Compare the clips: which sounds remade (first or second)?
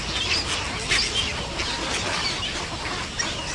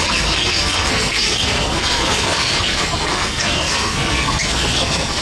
second